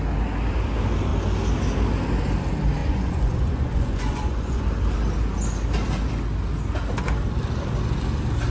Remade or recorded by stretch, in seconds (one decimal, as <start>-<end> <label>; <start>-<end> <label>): 0.0-2.8 recorded; 2.8-4.6 remade; 4.6-8.5 recorded